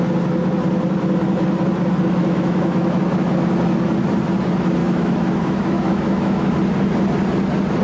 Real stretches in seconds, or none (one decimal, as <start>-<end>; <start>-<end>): 0.0-2.2; 3.0-4.8; 6.5-7.8